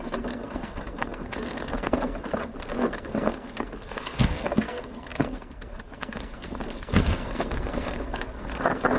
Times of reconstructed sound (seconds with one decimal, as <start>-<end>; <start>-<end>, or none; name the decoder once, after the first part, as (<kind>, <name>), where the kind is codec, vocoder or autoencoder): 0.0-9.0 (codec, SNAC)